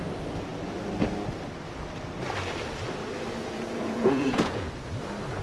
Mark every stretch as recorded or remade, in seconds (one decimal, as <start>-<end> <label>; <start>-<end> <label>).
0.0-3.4 recorded; 3.4-4.7 remade; 4.7-5.4 recorded

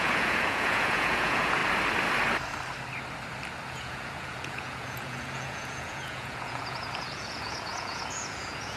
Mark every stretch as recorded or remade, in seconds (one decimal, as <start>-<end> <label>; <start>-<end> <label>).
0.0-1.6 remade; 1.6-3.7 recorded; 3.7-8.8 remade

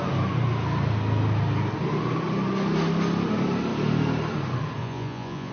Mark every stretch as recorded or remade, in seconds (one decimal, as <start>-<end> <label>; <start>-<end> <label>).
0.0-4.8 recorded; 4.8-5.5 remade

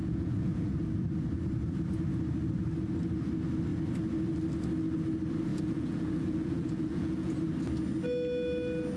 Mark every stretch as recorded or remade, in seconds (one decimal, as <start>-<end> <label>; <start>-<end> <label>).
0.0-0.7 remade; 0.7-5.5 recorded; 5.5-7.4 remade; 7.4-9.0 recorded

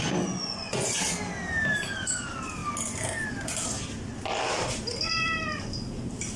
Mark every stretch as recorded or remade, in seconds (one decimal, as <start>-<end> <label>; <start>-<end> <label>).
0.0-0.4 recorded; 0.4-1.0 remade; 1.0-6.4 recorded

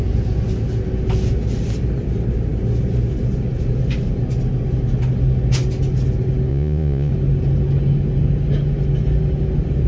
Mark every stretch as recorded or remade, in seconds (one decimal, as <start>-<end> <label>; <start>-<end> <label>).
0.0-6.5 recorded; 6.5-7.1 remade; 7.1-9.9 recorded